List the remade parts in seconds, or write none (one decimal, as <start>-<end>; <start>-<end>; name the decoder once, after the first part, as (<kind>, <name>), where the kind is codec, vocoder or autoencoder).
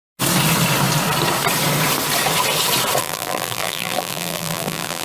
3.0-5.0 (vocoder, BigVGAN v2)